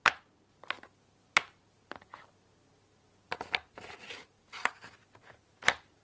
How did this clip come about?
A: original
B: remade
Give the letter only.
A